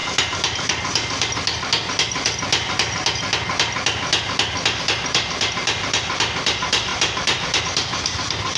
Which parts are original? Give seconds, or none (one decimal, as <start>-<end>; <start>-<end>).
0.0-4.8